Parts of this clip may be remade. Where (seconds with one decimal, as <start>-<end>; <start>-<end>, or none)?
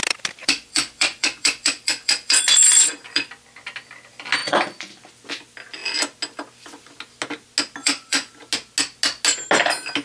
0.4-2.8; 4.4-4.9; 7.8-8.3